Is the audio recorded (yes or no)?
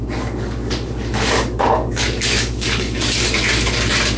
no